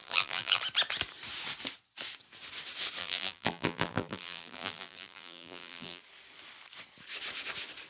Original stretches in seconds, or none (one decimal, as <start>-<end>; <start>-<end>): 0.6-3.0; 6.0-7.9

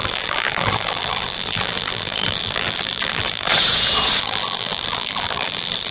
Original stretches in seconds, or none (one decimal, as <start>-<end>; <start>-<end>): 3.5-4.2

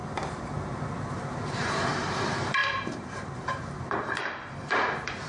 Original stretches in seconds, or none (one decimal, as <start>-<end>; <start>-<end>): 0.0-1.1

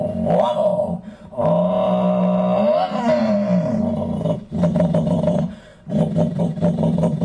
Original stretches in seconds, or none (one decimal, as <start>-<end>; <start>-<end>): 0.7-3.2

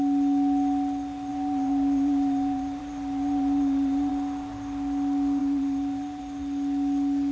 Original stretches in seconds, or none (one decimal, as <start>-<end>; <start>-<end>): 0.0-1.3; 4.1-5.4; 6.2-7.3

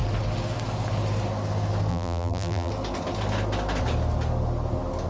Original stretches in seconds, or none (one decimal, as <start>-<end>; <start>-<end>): 0.0-1.9; 2.7-5.1

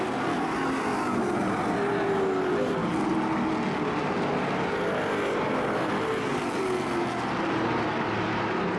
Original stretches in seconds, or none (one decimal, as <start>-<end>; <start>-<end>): 0.0-8.8

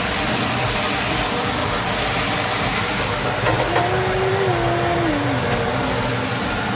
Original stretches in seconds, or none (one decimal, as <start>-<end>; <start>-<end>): 0.0-6.7